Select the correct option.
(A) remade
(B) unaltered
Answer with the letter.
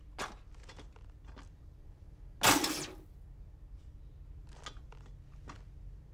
B